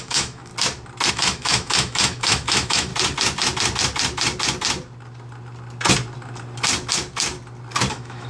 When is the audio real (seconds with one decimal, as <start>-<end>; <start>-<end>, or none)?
0.5-1.1; 2.9-7.9